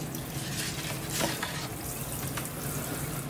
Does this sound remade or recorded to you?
recorded